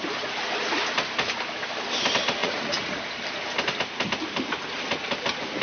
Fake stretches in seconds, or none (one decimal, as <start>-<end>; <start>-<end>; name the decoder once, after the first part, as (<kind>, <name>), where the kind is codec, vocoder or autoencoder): 2.4-3.0 (vocoder, Vocos)